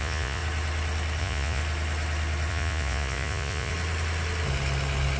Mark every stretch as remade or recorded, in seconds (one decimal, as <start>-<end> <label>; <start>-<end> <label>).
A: 0.0-0.4 remade; 0.4-1.2 recorded; 1.2-1.6 remade; 1.6-2.5 recorded; 2.5-3.7 remade; 3.7-5.2 recorded